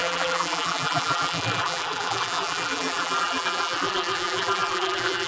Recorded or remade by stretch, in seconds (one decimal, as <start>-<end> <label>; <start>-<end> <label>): 0.0-5.3 remade